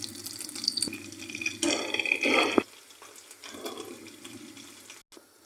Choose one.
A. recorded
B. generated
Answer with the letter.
A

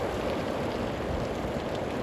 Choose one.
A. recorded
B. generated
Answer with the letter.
A